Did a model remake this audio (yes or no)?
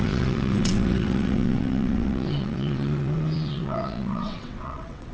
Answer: yes